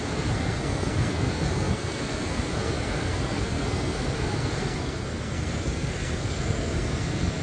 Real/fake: fake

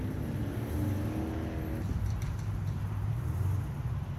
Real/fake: real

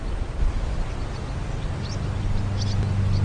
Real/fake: real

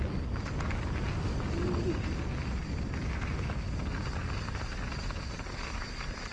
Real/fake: real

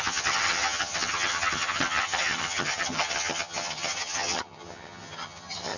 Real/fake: fake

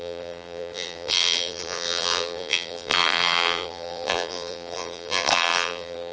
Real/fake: fake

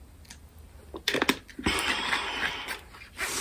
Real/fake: real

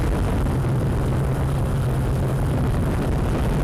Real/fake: real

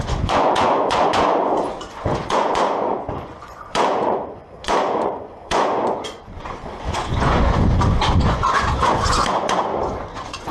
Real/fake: fake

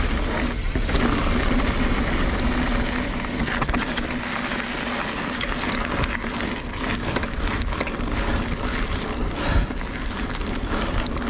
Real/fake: real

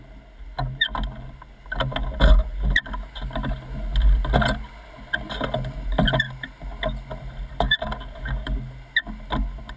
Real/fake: real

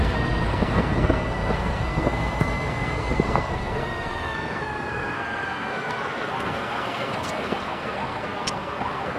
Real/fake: fake